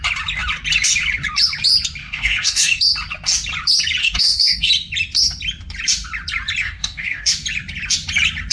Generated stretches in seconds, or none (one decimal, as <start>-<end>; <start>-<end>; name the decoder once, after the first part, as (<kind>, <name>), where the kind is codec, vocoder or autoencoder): 2.0-2.8 (codec, DAC); 4.0-4.7; 6.6-7.3